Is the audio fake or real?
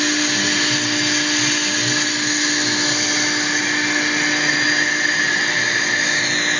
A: real